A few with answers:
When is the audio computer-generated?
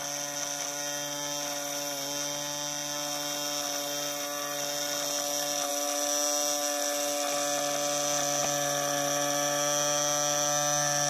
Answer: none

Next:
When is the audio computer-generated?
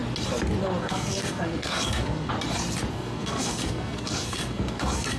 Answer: 0.8-2.3; 2.9-5.2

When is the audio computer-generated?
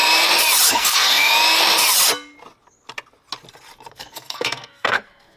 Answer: 0.7-1.3; 3.9-5.4